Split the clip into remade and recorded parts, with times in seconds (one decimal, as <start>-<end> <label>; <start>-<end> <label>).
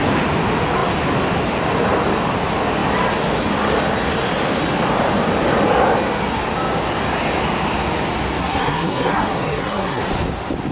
0.0-8.4 recorded; 8.4-10.0 remade; 10.0-10.7 recorded